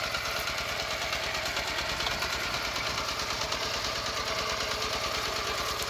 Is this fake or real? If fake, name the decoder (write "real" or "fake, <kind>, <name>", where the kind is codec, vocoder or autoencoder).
real